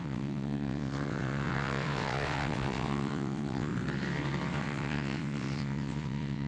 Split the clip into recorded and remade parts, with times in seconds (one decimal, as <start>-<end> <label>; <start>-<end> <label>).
0.0-3.7 remade; 3.7-4.6 recorded; 4.6-6.5 remade